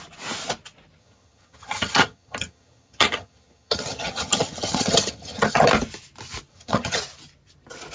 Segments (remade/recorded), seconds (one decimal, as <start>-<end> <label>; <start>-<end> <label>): 0.0-1.0 recorded; 1.0-5.7 remade; 5.7-6.5 recorded; 6.5-7.0 remade; 7.0-7.9 recorded